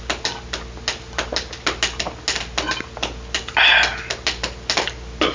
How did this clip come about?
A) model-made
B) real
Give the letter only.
B